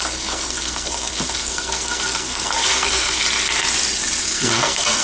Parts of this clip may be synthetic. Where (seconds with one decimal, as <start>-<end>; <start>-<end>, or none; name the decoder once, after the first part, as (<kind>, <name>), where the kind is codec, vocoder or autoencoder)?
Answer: 0.0-3.2 (codec, SNAC); 4.2-5.0